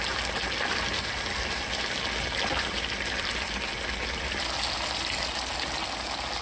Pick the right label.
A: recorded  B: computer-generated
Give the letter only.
A